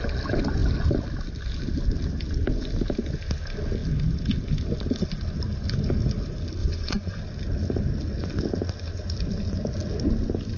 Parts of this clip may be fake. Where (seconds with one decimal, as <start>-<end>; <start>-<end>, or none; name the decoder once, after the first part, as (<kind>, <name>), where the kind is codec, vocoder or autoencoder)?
6.6-7.2 (vocoder, Vocos)